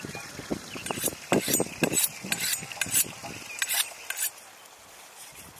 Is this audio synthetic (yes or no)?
no